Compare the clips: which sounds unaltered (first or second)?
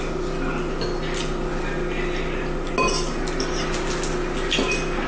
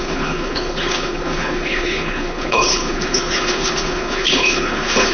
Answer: first